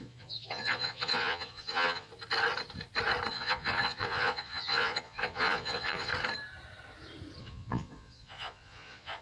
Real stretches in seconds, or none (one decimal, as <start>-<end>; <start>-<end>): 2.1-3.3; 6.1-7.4